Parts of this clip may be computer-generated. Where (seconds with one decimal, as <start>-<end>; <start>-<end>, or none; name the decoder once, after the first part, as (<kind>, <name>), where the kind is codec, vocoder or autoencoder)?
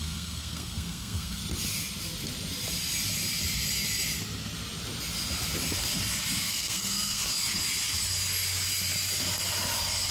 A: 0.0-1.4 (codec, SNAC); 6.4-7.2